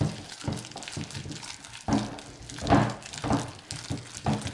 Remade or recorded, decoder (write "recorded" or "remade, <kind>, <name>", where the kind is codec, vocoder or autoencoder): recorded